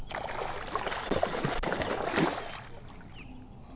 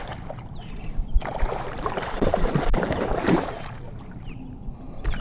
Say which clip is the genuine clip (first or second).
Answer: first